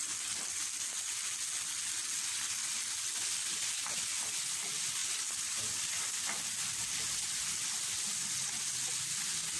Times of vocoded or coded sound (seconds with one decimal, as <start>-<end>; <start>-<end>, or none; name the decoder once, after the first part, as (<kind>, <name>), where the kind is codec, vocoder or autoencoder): none